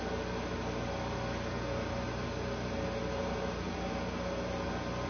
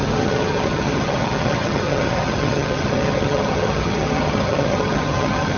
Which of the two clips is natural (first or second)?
first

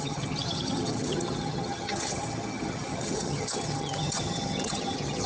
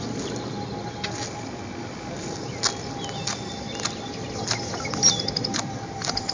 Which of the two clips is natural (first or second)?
second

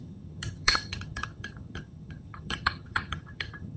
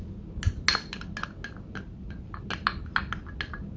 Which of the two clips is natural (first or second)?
second